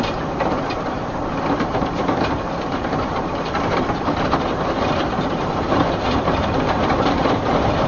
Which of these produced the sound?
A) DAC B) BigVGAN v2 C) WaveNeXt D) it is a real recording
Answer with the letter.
B